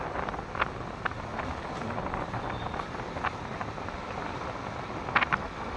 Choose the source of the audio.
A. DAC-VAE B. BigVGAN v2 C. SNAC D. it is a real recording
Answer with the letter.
D